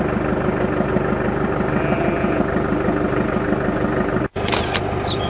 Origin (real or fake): real